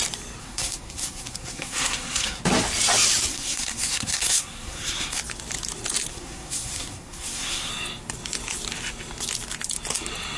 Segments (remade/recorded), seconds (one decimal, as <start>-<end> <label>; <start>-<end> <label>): 0.0-0.4 recorded; 0.4-2.4 remade; 2.4-3.3 recorded; 3.3-5.2 remade; 5.2-6.1 recorded; 6.1-7.7 remade; 7.7-10.4 recorded